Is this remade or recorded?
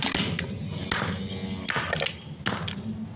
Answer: recorded